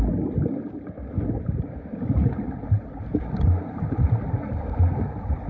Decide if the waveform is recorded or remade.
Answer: recorded